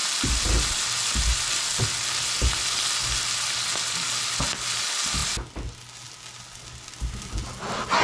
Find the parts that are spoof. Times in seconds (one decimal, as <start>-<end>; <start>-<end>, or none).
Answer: none